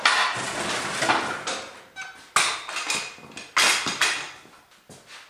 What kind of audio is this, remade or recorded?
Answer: recorded